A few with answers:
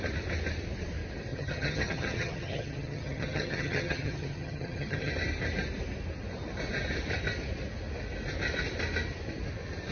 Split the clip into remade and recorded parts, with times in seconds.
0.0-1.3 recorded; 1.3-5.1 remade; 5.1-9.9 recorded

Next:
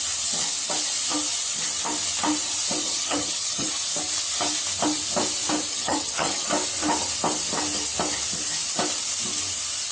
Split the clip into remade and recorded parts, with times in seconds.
0.0-2.8 recorded; 2.8-3.7 remade; 3.7-5.7 recorded; 5.7-6.5 remade; 6.5-9.9 recorded

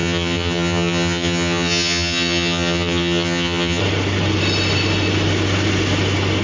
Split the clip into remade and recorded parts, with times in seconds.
0.0-3.8 remade; 3.8-6.4 recorded

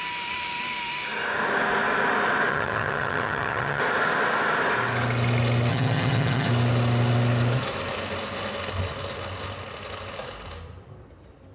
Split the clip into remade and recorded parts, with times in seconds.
0.0-2.5 recorded; 2.5-3.8 remade; 3.8-5.7 recorded; 5.7-6.5 remade; 6.5-11.5 recorded

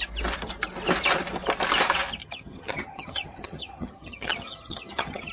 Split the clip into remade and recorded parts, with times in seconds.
0.0-2.2 recorded; 2.2-5.3 remade

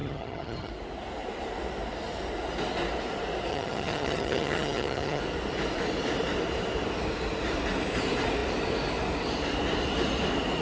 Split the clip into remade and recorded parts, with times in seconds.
0.0-0.7 remade; 0.7-3.5 recorded; 3.5-5.2 remade; 5.2-10.6 recorded